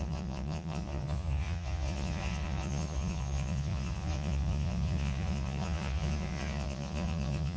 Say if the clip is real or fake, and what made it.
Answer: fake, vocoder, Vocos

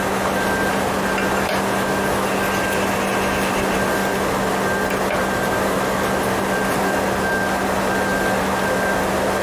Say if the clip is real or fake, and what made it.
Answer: real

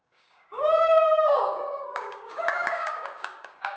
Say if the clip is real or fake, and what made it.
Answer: fake, codec, DAC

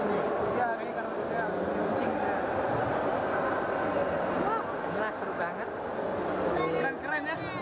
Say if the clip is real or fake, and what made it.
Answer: real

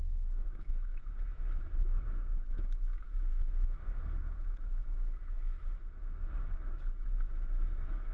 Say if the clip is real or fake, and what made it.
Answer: fake, autoencoder, DAC-VAE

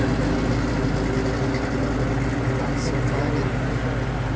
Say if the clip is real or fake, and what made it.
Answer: real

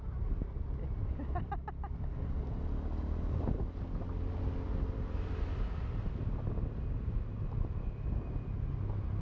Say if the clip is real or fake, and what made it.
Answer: real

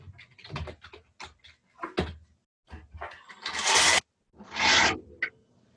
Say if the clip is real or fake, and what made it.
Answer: real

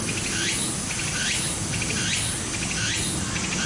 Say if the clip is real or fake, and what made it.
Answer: real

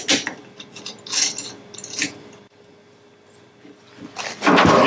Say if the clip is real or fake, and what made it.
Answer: real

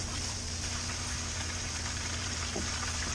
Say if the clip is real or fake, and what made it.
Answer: real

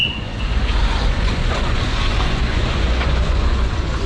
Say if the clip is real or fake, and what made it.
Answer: fake, vocoder, Vocos